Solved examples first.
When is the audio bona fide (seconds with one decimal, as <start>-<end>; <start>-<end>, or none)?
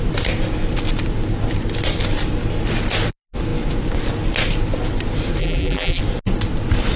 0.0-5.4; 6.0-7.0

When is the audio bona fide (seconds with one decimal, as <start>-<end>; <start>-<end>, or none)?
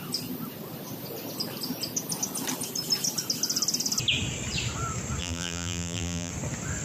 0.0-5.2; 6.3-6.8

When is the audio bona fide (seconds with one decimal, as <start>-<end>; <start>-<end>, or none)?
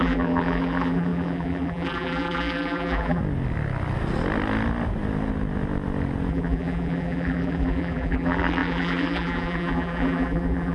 3.2-6.3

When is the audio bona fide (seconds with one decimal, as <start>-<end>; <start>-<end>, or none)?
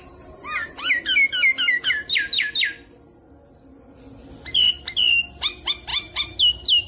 0.0-6.9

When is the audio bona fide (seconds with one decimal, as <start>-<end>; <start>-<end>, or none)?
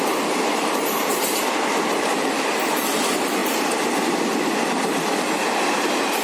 0.0-6.2